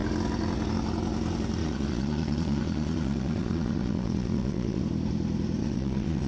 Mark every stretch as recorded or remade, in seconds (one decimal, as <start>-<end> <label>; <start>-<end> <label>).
0.0-1.6 recorded; 1.6-4.8 remade; 4.8-5.6 recorded; 5.6-6.3 remade

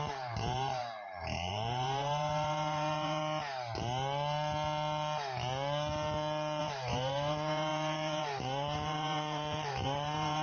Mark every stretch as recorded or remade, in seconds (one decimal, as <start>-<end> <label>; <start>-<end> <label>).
0.0-3.2 remade; 3.2-6.6 recorded; 6.6-10.4 remade

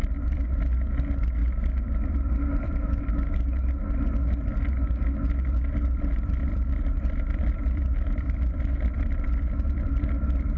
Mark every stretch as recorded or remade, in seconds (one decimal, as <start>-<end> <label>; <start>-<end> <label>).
0.0-0.6 remade; 0.6-1.4 recorded; 1.4-3.0 remade; 3.0-6.5 recorded; 6.5-10.0 remade; 10.0-10.6 recorded